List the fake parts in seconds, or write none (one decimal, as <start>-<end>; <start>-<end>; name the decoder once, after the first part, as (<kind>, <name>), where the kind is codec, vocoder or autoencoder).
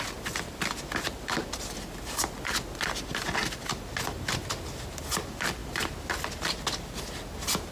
none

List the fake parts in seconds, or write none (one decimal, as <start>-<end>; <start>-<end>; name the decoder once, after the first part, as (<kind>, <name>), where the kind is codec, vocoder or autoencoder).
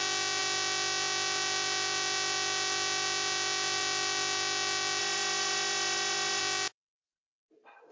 5.0-6.4 (autoencoder, DAC-VAE)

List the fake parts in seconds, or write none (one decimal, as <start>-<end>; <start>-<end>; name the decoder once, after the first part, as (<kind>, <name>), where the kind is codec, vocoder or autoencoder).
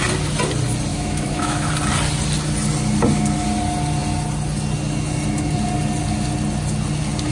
0.9-1.7 (autoencoder, DAC-VAE)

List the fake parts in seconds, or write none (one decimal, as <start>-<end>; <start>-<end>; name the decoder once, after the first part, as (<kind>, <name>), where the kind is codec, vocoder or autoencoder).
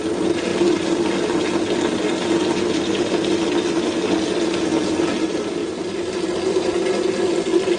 5.6-6.7 (vocoder, BigVGAN v2)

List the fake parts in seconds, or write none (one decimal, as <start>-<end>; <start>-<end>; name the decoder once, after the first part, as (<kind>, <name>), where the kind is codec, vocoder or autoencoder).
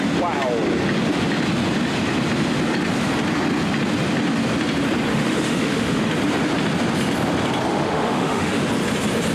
5.1-6.1 (autoencoder, DAC-VAE); 7.7-8.6